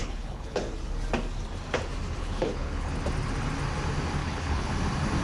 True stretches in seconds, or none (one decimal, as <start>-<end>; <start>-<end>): 0.6-2.2; 3.0-4.2; 4.7-5.2